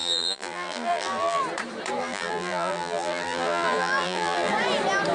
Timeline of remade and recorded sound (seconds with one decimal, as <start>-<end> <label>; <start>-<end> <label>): 0.0-1.4 remade; 1.4-2.0 recorded; 2.0-4.5 remade; 4.5-5.1 recorded